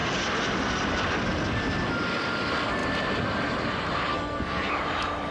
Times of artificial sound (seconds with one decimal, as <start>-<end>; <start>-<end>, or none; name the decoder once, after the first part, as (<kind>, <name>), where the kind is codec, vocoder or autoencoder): 4.1-4.7 (codec, SNAC)